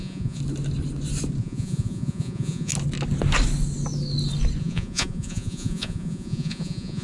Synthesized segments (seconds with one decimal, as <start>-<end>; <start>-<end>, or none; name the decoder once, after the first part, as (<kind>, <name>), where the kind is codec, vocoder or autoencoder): 0.0-0.4 (vocoder, Vocos); 1.4-2.7; 4.6-7.0